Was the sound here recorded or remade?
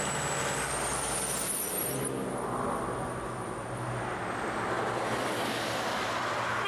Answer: recorded